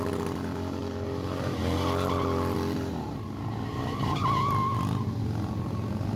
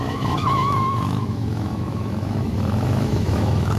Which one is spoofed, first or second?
second